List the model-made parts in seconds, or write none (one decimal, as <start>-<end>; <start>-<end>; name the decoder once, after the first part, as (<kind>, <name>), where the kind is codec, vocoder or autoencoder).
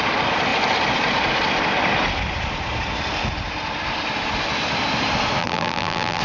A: 5.4-6.2 (vocoder, BigVGAN v2)